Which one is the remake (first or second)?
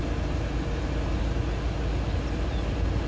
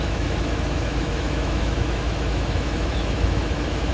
second